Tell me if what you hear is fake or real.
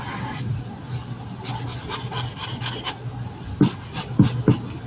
real